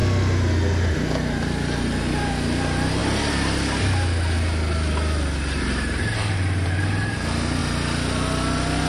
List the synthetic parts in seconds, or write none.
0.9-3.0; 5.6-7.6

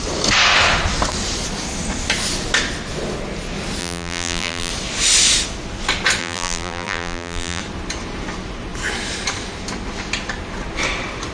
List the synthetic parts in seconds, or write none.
3.8-4.7; 6.2-7.6

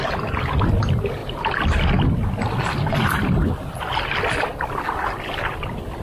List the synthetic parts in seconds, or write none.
none

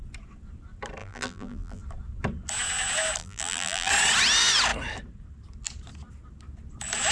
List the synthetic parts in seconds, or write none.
1.0-1.8; 3.2-3.9

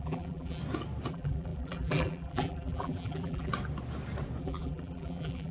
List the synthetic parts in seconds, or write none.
0.0-0.6; 1.1-3.5; 4.4-5.5

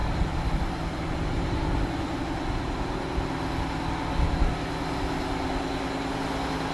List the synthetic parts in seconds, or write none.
0.0-2.2